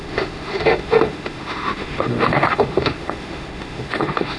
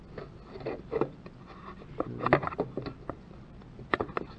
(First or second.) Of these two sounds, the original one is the second